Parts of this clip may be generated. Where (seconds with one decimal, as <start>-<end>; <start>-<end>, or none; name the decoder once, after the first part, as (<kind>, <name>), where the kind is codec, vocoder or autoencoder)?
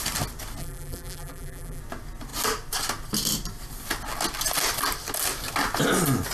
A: 0.6-1.8 (vocoder, BigVGAN v2)